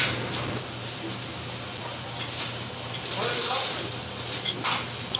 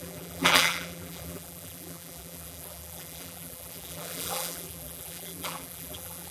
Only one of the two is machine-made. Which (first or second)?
second